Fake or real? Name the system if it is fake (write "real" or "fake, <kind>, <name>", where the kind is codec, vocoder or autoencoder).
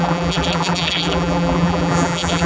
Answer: fake, vocoder, BigVGAN v2